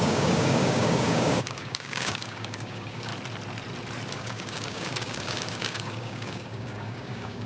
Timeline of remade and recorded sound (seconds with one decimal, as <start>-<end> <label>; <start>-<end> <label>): 0.0-3.1 remade; 3.1-4.1 recorded; 4.1-7.5 remade